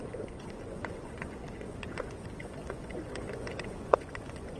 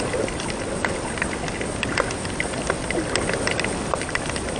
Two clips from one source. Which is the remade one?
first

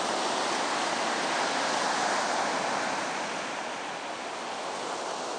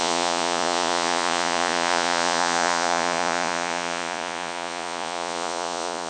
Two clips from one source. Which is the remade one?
second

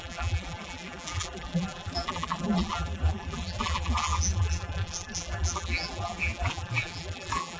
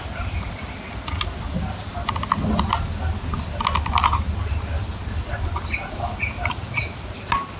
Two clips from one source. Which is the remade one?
first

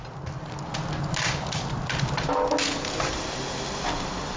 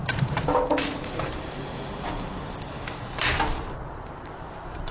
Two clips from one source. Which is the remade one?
second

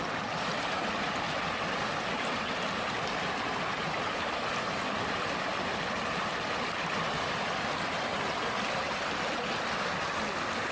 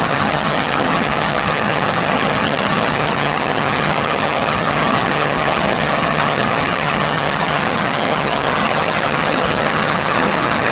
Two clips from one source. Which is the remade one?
second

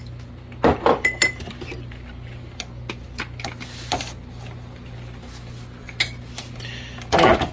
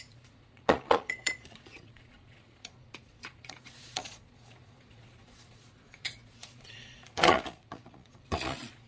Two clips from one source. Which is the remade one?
second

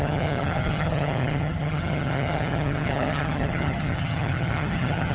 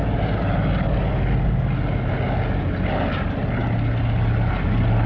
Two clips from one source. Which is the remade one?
first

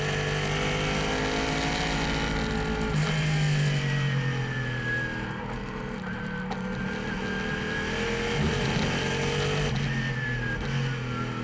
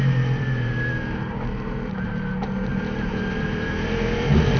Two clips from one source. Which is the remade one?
second